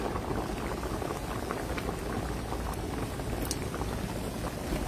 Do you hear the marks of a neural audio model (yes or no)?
no